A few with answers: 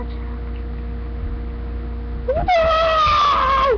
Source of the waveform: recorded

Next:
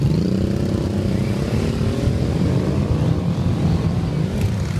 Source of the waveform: recorded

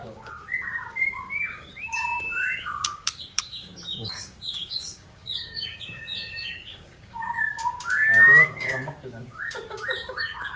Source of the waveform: remade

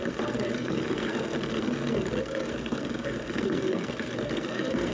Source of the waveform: remade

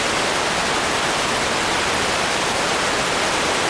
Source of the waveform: recorded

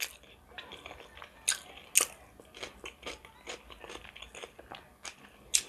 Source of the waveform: recorded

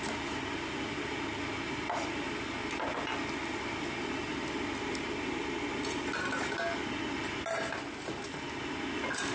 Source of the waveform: recorded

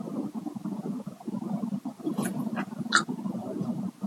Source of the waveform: recorded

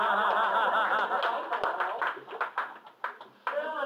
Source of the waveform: recorded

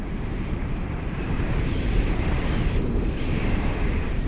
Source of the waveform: remade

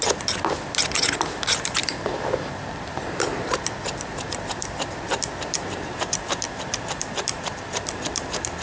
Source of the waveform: remade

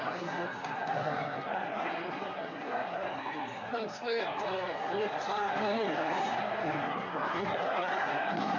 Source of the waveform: remade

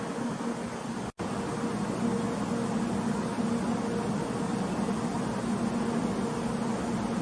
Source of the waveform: recorded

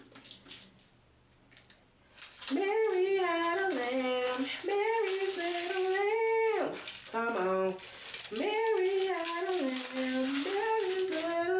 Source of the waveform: recorded